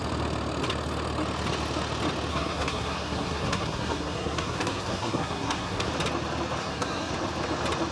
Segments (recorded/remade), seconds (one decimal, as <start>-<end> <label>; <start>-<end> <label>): 0.0-2.3 recorded; 2.3-5.9 remade; 5.9-6.6 recorded; 6.6-7.1 remade; 7.1-7.9 recorded